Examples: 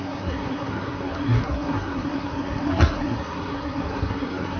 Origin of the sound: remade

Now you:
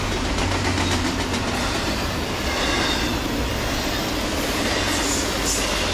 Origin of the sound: recorded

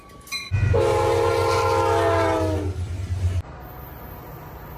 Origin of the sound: recorded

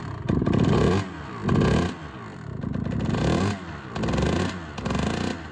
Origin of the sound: recorded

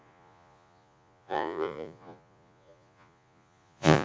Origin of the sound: remade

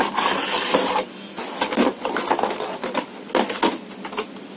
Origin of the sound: recorded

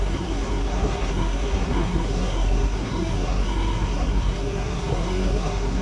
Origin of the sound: remade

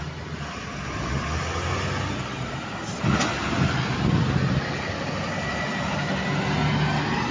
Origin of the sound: recorded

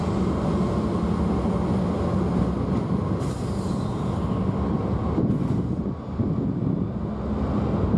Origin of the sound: recorded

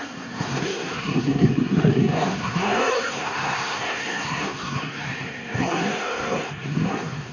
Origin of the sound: remade